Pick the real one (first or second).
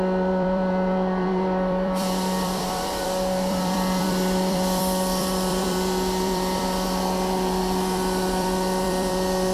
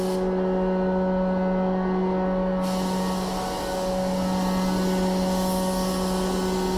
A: second